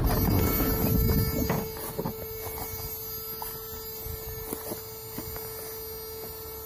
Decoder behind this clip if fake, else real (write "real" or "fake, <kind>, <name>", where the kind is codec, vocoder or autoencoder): real